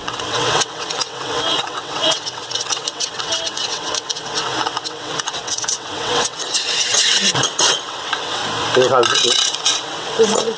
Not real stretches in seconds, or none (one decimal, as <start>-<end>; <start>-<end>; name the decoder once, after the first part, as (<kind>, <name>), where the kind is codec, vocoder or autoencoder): 0.0-8.4 (vocoder, WaveNeXt); 9.1-10.6